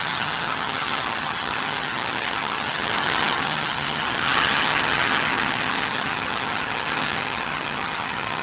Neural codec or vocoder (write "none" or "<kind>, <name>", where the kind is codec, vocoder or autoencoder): vocoder, HiFi-GAN